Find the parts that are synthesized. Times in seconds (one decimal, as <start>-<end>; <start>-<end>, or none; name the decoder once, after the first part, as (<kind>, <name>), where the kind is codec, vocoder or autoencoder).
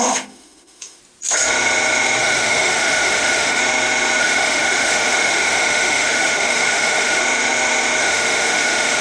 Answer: 0.0-1.0 (autoencoder, DAC-VAE); 2.2-3.6; 4.2-7.2; 8.0-9.0